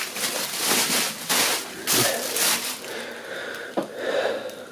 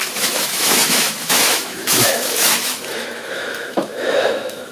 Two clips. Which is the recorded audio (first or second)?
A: first